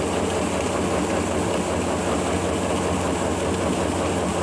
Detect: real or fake real